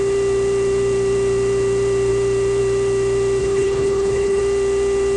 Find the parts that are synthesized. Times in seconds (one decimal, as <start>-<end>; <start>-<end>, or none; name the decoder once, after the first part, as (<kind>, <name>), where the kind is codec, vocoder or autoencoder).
3.4-4.4 (codec, HILCodec)